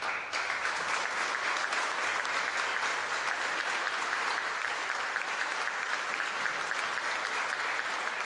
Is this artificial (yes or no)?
no